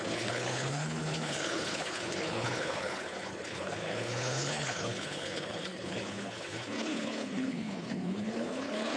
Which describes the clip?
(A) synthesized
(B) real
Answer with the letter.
A